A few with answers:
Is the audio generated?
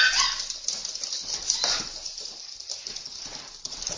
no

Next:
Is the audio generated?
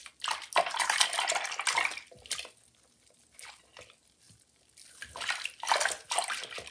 no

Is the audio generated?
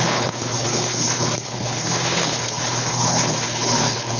yes